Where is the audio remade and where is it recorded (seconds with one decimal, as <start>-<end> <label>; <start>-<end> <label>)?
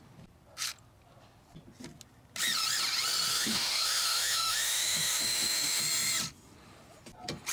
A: 0.0-3.3 recorded; 3.3-5.8 remade; 5.8-7.5 recorded